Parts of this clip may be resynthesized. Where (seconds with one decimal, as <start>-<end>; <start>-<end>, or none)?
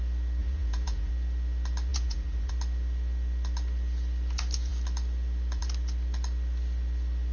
0.4-1.1; 1.9-2.5